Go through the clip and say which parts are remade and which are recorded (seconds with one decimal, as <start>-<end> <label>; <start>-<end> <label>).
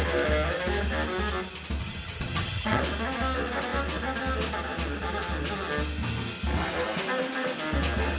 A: 0.0-1.8 recorded; 1.8-2.8 remade; 2.8-8.2 recorded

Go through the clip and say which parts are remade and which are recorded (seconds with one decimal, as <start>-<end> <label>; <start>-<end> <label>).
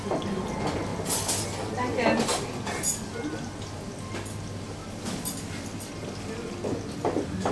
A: 0.0-7.5 recorded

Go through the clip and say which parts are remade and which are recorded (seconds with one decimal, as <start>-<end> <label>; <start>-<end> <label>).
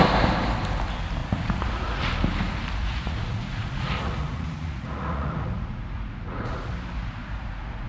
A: 0.0-1.2 recorded; 1.2-2.0 remade; 2.0-2.8 recorded; 2.8-6.7 remade; 6.7-7.2 recorded; 7.2-7.9 remade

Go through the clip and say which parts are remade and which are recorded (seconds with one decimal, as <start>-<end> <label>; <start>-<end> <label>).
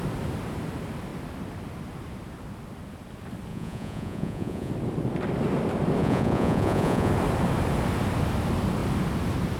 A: 0.0-3.5 recorded; 3.5-4.7 remade; 4.7-6.0 recorded; 6.0-7.1 remade; 7.1-9.6 recorded